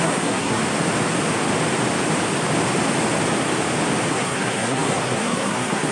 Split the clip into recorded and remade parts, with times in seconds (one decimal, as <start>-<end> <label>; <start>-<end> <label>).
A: 0.0-0.6 remade; 0.6-4.1 recorded; 4.1-5.9 remade